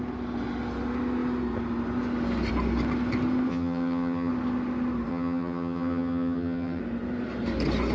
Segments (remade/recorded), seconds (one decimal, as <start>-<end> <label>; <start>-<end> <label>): 0.0-3.5 recorded; 3.5-4.3 remade; 4.3-5.1 recorded; 5.1-6.8 remade; 6.8-7.9 recorded